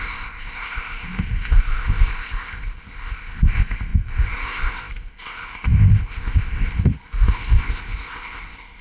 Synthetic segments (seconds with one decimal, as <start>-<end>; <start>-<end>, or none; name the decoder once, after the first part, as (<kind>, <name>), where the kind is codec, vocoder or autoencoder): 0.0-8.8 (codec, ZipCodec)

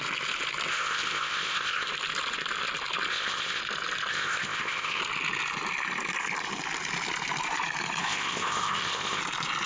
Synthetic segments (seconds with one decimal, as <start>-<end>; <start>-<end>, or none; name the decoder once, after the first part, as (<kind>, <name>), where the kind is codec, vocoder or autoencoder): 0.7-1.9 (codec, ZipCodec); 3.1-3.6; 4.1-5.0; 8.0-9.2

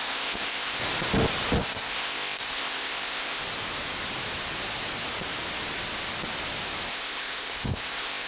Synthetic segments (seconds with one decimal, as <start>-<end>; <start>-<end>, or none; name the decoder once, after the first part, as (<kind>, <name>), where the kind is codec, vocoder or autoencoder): 0.0-0.8 (codec, ZipCodec); 1.6-3.4; 6.9-8.3

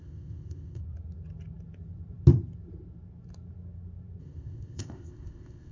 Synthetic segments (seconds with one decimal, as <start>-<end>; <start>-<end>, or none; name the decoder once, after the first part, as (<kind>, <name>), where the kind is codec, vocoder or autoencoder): 0.0-0.8 (codec, ZipCodec); 4.2-5.7

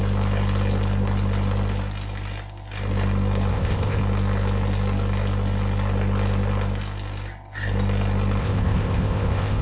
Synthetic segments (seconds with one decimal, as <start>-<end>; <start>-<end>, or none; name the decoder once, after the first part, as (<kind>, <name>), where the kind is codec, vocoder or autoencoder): 3.5-4.0 (codec, ZipCodec); 8.4-9.6

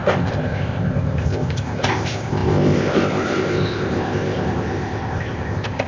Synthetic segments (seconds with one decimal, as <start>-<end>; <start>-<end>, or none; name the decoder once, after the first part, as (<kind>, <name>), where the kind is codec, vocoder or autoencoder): 0.0-5.9 (codec, ZipCodec)